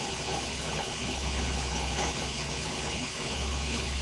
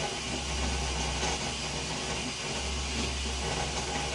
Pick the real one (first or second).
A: second